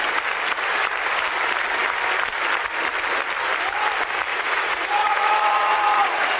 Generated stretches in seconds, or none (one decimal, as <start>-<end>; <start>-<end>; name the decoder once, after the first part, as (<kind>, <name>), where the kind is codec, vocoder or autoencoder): 4.3-6.4 (vocoder, Vocos)